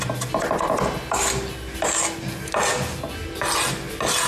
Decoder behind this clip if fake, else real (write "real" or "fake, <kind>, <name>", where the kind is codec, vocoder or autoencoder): real